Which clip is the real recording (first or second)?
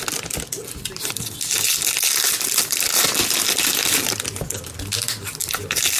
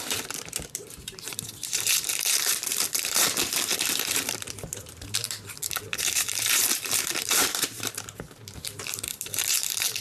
first